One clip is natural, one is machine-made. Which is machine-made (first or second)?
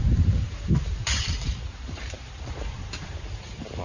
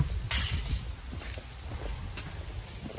first